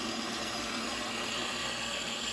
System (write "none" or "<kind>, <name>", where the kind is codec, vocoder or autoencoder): codec, SNAC